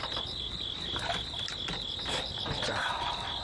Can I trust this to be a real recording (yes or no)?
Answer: yes